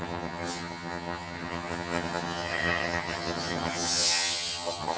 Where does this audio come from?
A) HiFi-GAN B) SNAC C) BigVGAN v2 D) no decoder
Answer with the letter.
A